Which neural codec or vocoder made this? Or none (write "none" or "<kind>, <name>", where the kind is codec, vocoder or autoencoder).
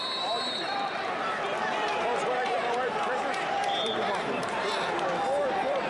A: vocoder, BigVGAN v2